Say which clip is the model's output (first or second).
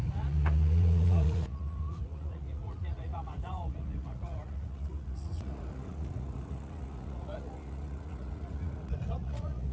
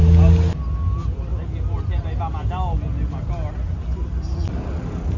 first